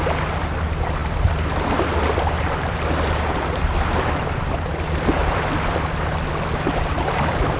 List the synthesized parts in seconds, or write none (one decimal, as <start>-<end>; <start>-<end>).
none